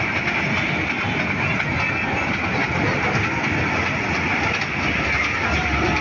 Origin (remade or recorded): recorded